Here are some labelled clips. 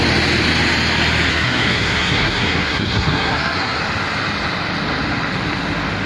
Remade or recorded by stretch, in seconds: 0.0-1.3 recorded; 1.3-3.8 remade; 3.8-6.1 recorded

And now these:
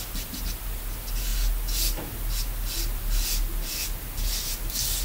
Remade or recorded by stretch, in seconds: 0.0-5.0 recorded

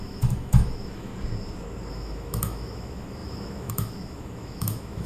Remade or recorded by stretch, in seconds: 0.0-1.1 remade; 1.1-1.9 recorded; 1.9-5.1 remade

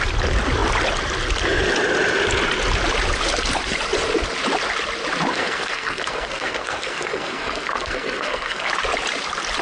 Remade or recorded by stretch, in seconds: 0.0-5.3 recorded; 5.3-8.7 remade; 8.7-9.6 recorded

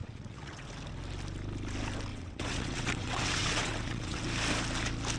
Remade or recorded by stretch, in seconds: 0.0-0.7 remade; 0.7-2.1 recorded; 2.1-4.2 remade; 4.2-5.2 recorded